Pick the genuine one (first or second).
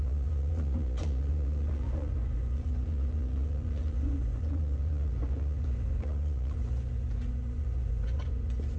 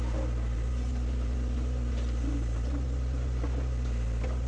second